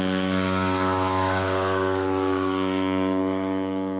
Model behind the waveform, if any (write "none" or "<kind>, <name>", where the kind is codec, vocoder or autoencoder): codec, DAC